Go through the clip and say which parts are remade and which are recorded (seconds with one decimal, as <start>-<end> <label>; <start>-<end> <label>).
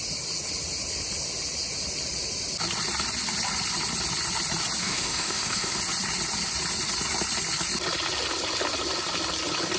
0.0-4.8 recorded; 4.8-5.8 remade; 5.8-9.8 recorded